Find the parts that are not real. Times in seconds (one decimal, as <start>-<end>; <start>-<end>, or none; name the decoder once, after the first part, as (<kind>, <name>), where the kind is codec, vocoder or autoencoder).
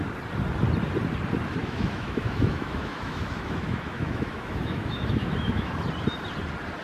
1.6-5.7 (autoencoder, DAC-VAE)